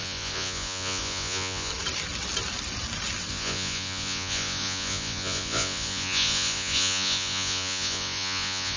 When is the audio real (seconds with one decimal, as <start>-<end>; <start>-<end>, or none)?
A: 1.7-3.3